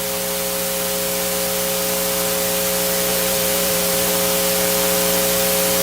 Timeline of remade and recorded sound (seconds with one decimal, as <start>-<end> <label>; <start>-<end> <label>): 0.0-3.1 recorded; 3.1-4.1 remade; 4.1-5.8 recorded